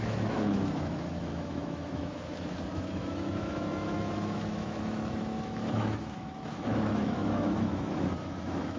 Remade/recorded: remade